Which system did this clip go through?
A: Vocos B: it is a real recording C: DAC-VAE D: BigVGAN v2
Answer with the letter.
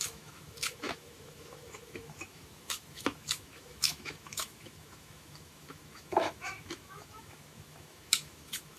C